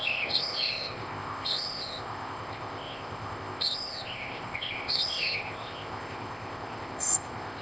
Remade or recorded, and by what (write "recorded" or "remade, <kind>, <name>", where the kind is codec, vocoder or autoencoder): remade, codec, ZipCodec